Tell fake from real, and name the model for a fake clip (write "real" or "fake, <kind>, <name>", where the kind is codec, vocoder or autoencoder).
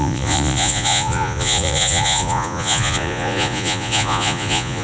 fake, vocoder, Vocos